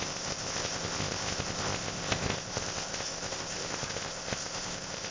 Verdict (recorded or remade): remade